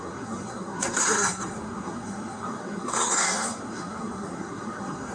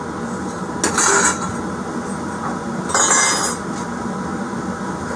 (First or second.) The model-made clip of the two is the first